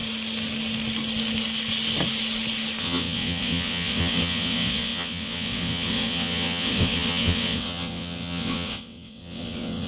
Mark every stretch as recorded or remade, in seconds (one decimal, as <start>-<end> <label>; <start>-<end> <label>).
0.0-2.8 recorded; 2.8-9.9 remade

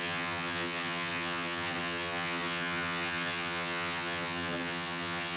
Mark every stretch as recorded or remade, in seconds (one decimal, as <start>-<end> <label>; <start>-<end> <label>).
0.0-5.4 remade

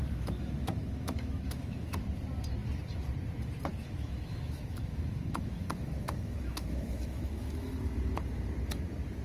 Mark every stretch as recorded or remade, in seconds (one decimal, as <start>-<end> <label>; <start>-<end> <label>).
0.0-1.9 remade; 1.9-3.8 recorded; 3.8-7.7 remade; 7.7-9.2 recorded